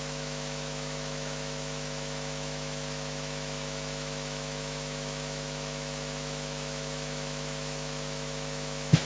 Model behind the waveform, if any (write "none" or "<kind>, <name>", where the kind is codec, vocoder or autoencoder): autoencoder, DAC-VAE